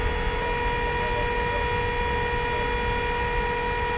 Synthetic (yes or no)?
no